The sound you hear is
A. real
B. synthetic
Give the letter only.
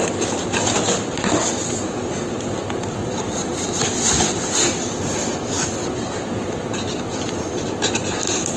A